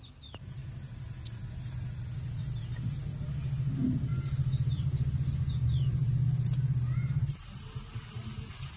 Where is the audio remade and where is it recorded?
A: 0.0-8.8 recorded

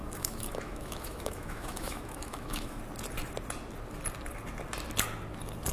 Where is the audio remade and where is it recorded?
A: 0.0-2.8 remade; 2.8-5.7 recorded

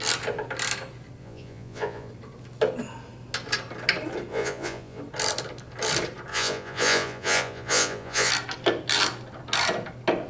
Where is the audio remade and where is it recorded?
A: 0.0-1.2 recorded; 1.2-2.1 remade; 2.1-4.3 recorded; 4.3-5.0 remade; 5.0-6.3 recorded; 6.3-8.3 remade; 8.3-10.3 recorded

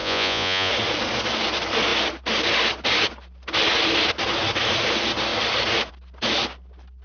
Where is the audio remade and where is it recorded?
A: 0.0-0.7 remade; 0.7-7.0 recorded

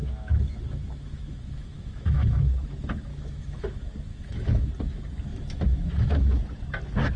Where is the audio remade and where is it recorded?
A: 0.0-2.5 remade; 2.5-3.1 recorded; 3.1-3.6 remade; 3.6-4.1 recorded; 4.1-4.7 remade; 4.7-5.3 recorded; 5.3-6.4 remade; 6.4-7.2 recorded